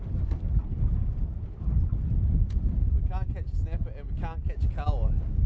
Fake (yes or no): no